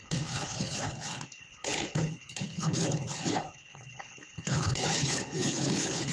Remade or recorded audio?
remade